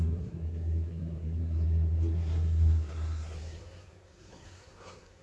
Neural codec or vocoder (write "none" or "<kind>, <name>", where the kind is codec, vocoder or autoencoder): codec, SNAC